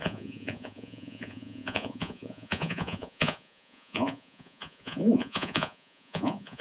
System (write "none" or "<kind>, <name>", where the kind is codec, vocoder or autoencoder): vocoder, Vocos